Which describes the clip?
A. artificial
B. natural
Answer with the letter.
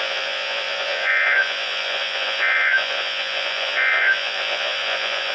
A